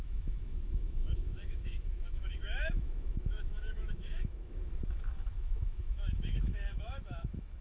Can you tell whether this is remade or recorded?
remade